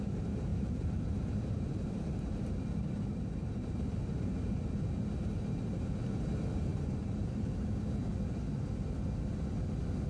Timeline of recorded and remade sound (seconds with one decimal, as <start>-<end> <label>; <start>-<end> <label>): 0.0-0.5 recorded; 0.5-4.7 remade; 4.7-6.7 recorded; 6.7-7.5 remade; 7.5-10.1 recorded